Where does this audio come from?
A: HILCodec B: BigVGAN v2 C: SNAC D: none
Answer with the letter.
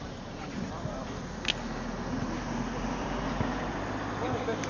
D